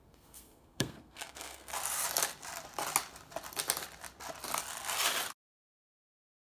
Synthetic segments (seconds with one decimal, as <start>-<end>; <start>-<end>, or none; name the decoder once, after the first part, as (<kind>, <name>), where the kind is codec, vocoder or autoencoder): 0.0-1.7 (codec, SNAC); 5.4-6.5